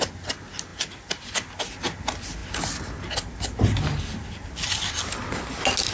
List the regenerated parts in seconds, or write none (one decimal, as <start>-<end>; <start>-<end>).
none